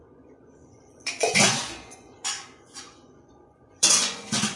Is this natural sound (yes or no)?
no